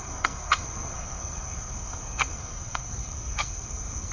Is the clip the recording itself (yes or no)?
no